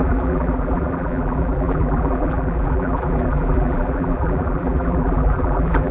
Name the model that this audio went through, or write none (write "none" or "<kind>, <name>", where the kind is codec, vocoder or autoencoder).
vocoder, BigVGAN v2